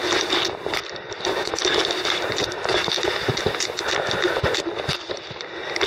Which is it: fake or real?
real